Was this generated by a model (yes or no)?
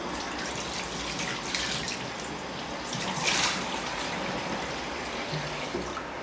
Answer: no